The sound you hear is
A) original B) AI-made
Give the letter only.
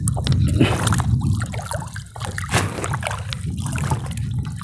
A